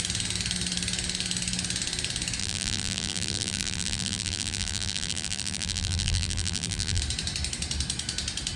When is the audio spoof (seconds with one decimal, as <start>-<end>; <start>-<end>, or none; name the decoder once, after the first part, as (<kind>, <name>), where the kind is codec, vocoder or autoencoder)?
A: 2.4-7.0 (vocoder, BigVGAN v2)